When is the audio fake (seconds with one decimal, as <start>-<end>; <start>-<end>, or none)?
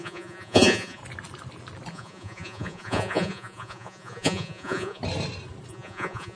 0.0-1.0; 1.9-5.0; 5.7-6.4